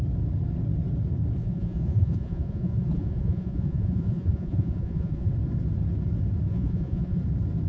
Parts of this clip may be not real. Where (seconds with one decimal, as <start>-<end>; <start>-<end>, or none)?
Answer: 1.4-5.3; 6.5-7.2